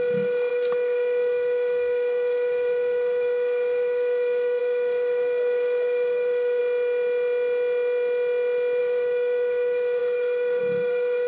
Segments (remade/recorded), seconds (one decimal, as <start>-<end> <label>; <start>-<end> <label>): 0.0-6.6 remade; 6.6-8.8 recorded; 8.8-11.3 remade